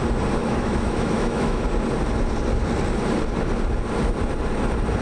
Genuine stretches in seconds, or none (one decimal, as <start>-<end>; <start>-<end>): 0.0-0.4; 1.6-5.0